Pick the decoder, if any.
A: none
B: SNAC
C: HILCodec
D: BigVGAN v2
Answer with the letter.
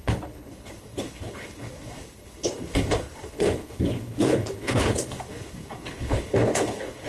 C